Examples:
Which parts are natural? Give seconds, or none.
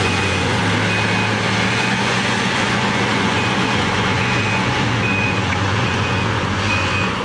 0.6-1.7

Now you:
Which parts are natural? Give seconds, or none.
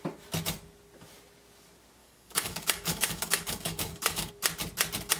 0.0-2.0; 4.3-5.2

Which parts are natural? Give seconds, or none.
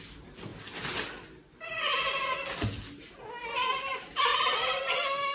0.0-5.3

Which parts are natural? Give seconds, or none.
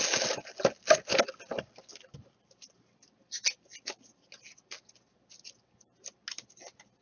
0.0-7.0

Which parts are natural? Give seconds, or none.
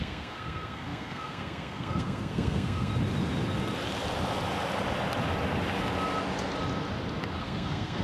2.9-7.4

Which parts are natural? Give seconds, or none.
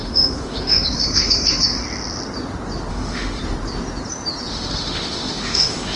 1.8-2.9; 3.4-4.5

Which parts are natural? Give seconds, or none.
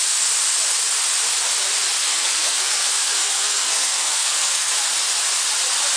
0.0-2.0; 4.7-6.0